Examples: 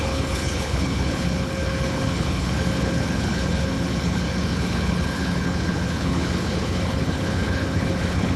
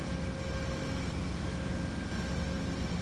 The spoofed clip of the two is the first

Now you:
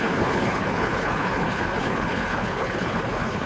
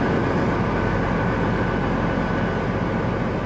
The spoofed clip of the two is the first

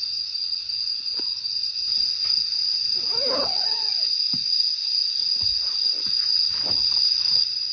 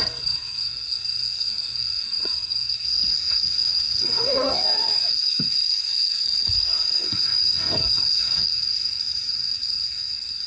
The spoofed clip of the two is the second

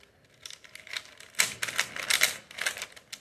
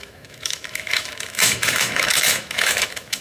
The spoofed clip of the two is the second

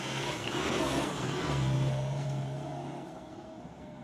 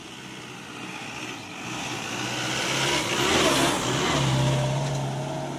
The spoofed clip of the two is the first